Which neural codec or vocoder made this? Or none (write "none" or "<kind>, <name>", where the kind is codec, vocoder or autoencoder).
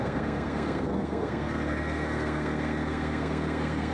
codec, SNAC